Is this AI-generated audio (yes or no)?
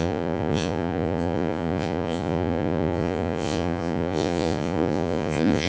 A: yes